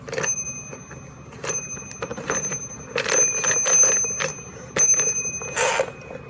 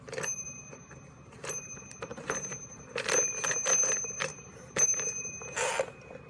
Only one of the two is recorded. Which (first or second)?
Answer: first